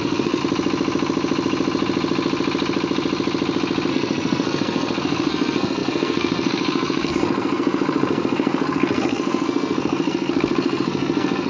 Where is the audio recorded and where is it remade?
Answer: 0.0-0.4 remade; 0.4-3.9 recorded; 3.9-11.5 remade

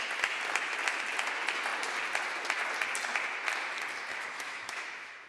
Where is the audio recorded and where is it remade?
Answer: 0.0-4.1 recorded; 4.1-5.3 remade